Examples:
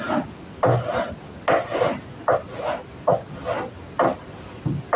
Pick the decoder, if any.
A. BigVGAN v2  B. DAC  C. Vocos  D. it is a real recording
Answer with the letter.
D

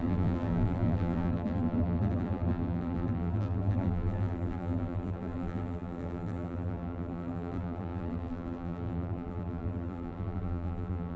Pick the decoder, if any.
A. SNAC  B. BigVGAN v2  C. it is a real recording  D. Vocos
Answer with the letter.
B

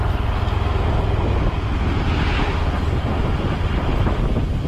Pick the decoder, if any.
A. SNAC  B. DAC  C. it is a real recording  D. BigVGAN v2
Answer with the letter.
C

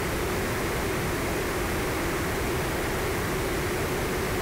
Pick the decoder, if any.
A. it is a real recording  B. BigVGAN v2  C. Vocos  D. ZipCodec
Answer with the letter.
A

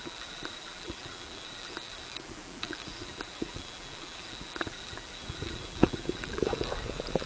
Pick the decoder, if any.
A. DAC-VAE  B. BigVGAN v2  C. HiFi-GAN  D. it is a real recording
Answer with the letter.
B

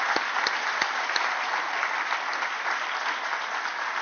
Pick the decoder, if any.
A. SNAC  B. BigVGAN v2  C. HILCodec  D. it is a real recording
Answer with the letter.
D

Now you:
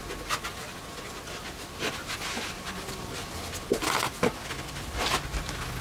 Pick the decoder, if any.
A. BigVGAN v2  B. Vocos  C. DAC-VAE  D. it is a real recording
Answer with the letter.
D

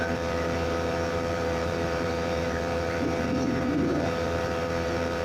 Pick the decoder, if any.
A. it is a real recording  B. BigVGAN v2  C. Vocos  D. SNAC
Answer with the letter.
B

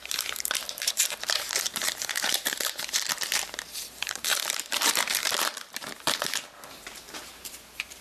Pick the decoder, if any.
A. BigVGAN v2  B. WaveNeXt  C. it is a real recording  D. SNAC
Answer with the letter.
A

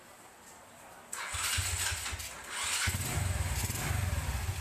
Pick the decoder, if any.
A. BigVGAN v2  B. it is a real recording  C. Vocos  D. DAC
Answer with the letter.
B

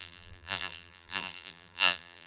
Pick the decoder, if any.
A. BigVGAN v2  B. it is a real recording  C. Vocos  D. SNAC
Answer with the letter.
A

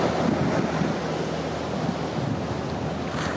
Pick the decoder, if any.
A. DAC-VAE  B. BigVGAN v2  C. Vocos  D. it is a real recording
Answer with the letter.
D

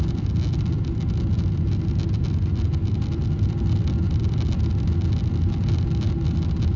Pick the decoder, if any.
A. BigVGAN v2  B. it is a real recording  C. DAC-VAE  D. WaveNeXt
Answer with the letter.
B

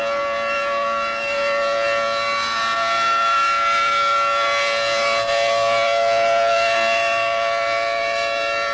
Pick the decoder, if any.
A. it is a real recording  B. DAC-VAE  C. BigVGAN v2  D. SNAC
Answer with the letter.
A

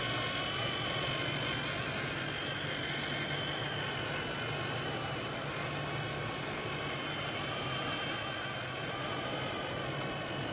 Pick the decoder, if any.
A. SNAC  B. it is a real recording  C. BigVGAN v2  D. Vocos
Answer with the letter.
B